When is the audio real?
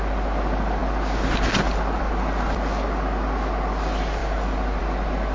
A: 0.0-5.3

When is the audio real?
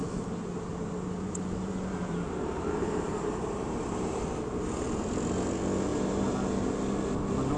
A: 0.0-0.7; 4.2-5.9; 6.8-7.6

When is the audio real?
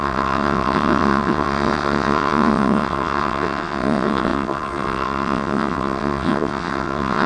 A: none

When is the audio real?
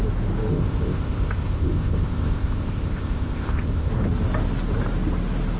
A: 0.0-0.5; 3.9-5.6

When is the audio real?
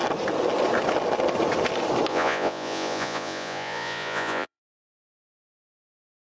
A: 0.0-2.1; 4.6-6.2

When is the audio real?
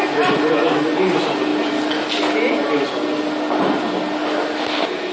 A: 0.0-5.1